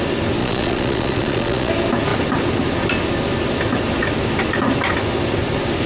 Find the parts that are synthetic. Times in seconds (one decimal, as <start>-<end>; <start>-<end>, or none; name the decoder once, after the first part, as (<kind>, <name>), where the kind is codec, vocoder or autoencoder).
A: 0.4-1.7 (vocoder, Vocos)